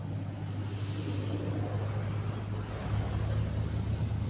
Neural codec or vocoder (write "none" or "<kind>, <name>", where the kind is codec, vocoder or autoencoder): none